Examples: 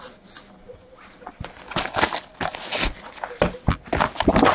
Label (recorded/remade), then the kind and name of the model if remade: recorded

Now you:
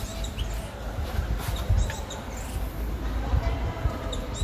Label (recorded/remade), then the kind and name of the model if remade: recorded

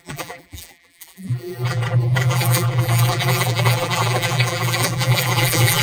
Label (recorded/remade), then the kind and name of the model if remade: remade, vocoder, BigVGAN v2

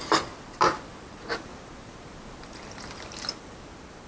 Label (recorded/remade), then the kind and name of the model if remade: recorded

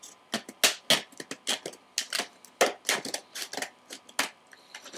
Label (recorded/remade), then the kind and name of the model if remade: recorded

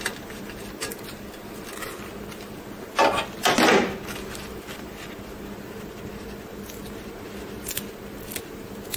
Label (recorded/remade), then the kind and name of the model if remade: recorded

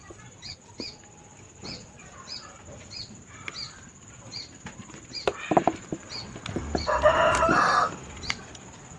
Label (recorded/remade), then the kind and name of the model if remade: recorded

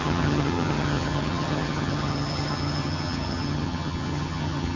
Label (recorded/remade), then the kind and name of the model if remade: remade, vocoder, HiFi-GAN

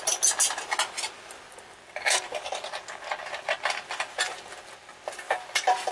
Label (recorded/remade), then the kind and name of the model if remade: recorded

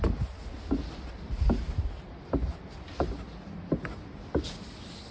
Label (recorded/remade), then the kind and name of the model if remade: recorded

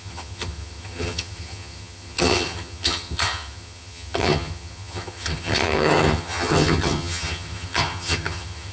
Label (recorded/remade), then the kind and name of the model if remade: remade, vocoder, HiFi-GAN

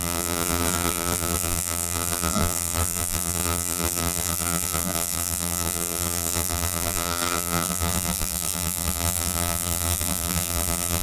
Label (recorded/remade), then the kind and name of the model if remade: remade, vocoder, BigVGAN v2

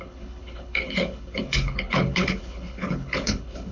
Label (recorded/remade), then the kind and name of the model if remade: remade, codec, HILCodec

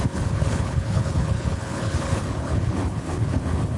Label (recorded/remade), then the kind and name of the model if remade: remade, codec, HILCodec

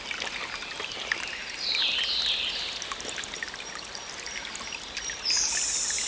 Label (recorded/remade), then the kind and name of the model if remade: recorded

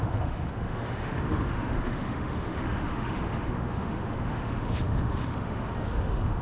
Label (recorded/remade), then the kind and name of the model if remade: remade, autoencoder, DAC-VAE